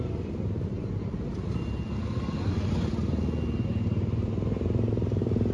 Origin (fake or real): real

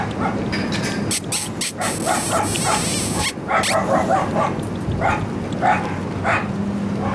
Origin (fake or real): real